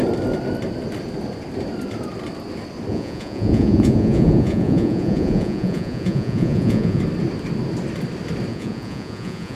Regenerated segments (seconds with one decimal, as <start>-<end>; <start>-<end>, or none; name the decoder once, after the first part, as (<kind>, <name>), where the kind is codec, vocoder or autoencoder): 2.9-7.0 (vocoder, Vocos); 8.5-9.6